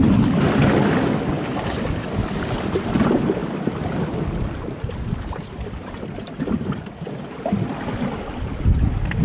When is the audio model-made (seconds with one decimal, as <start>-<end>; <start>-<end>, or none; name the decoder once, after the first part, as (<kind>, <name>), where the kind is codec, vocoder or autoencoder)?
none